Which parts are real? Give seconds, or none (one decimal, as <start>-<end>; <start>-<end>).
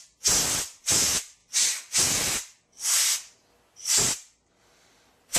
0.0-5.4